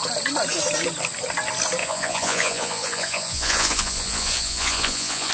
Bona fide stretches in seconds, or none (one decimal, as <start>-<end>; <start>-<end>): 0.0-1.8

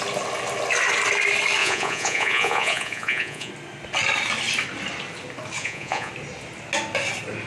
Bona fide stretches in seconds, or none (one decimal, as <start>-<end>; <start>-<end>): 0.0-1.6; 3.5-5.6; 6.1-7.5

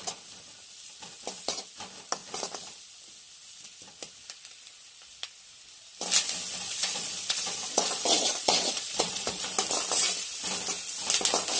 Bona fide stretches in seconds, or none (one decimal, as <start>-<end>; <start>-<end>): 0.0-6.5; 9.4-11.6

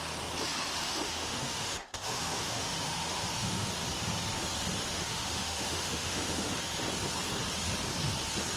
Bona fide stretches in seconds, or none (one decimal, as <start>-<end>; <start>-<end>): 0.0-0.7; 3.7-4.9; 6.5-8.6